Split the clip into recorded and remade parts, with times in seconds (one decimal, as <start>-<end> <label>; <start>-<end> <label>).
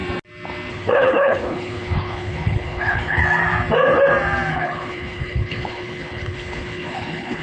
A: 0.0-0.7 recorded; 0.7-3.2 remade; 3.2-4.5 recorded; 4.5-7.4 remade